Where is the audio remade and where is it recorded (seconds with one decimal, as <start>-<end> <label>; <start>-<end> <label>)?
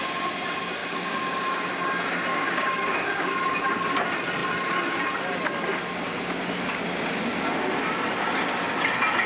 0.0-0.8 recorded; 0.8-1.7 remade; 1.7-2.3 recorded; 2.3-3.3 remade; 3.3-9.3 recorded